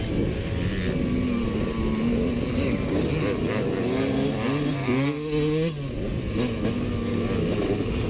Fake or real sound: real